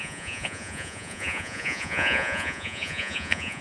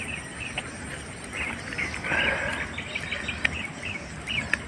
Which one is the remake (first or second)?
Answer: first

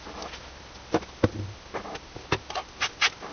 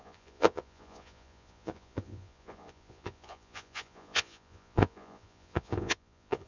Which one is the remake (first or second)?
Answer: second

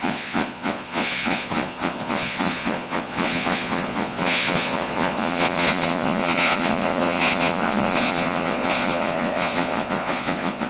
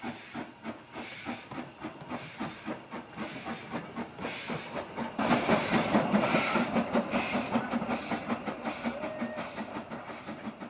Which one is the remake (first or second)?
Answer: first